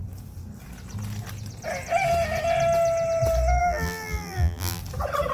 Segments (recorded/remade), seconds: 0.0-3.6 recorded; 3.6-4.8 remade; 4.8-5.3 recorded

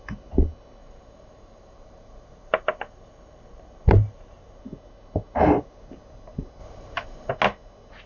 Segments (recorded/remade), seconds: 0.0-0.8 recorded; 0.8-4.6 remade; 4.6-6.6 recorded; 6.6-7.3 remade; 7.3-8.1 recorded